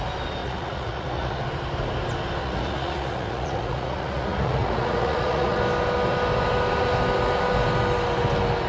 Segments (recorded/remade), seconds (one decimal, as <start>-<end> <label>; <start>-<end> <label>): 0.0-0.4 recorded; 0.4-1.4 remade; 1.4-2.4 recorded; 2.4-5.6 remade; 5.6-8.7 recorded